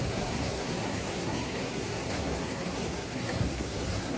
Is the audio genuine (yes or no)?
no